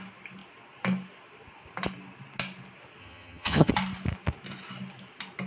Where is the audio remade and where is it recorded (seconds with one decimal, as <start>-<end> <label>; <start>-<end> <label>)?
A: 0.0-3.0 recorded; 3.0-3.7 remade; 3.7-5.5 recorded